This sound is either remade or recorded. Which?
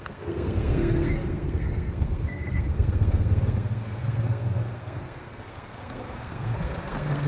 remade